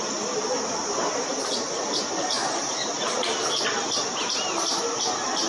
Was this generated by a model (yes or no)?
no